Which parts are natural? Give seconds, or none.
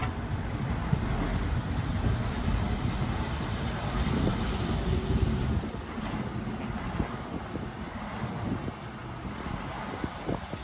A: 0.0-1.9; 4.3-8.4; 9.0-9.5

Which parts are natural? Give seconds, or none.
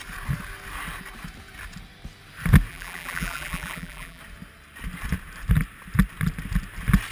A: 0.0-2.7; 4.2-7.1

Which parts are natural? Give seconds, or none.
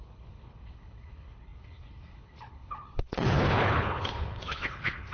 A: none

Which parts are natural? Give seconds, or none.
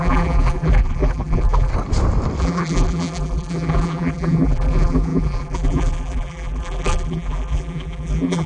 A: 1.7-2.4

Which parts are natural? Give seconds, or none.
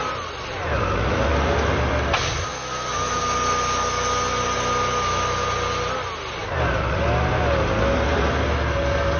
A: 0.0-9.2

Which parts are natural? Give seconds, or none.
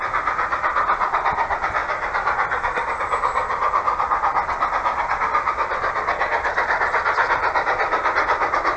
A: 0.0-8.8